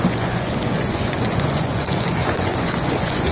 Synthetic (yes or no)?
yes